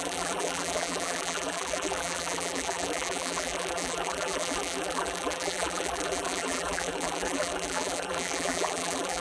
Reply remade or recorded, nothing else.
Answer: remade